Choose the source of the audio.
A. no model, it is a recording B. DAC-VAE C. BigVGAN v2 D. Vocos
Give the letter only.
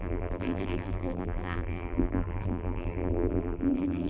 C